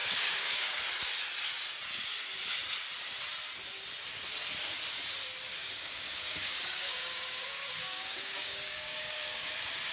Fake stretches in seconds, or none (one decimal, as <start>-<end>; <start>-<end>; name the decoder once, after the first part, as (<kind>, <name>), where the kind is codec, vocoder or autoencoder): 0.0-0.8 (codec, DAC); 5.6-9.5